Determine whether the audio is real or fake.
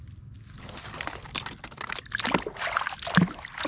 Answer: real